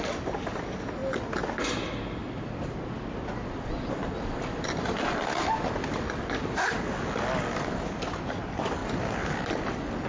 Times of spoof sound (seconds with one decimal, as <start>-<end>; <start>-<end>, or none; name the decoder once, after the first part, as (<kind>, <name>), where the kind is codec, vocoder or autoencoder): none